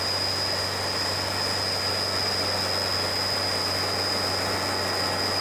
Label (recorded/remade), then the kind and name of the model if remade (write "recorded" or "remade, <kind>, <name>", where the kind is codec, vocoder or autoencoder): recorded